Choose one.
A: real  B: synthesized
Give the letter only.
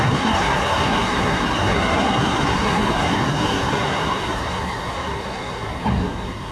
B